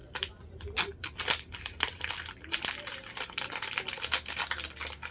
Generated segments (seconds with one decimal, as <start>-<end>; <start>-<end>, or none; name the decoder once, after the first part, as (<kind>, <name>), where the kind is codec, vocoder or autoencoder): 0.0-2.1 (vocoder, BigVGAN v2)